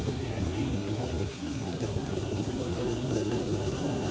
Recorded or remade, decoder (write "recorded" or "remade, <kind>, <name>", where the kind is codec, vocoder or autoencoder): remade, codec, SNAC